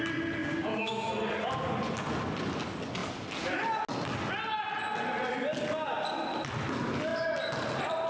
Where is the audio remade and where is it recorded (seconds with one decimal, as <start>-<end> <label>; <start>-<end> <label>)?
0.0-0.4 recorded; 0.4-1.1 remade; 1.1-8.1 recorded